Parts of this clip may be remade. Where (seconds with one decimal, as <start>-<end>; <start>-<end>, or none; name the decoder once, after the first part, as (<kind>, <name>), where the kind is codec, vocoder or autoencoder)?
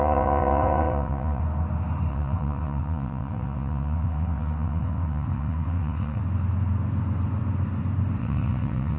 0.0-1.4 (vocoder, WaveNeXt); 2.1-6.2; 8.2-9.0